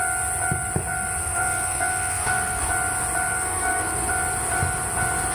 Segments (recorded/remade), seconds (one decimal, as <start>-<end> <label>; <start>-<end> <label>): 0.0-1.2 recorded; 1.2-2.6 remade; 2.6-3.3 recorded; 3.3-4.1 remade; 4.1-5.3 recorded